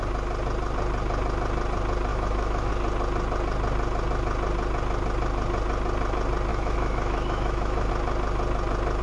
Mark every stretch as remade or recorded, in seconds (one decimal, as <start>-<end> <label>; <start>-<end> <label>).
0.0-2.1 recorded; 2.1-2.7 remade; 2.7-6.5 recorded; 6.5-7.9 remade; 7.9-9.0 recorded